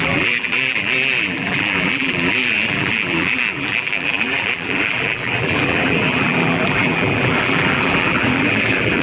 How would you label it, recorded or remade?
remade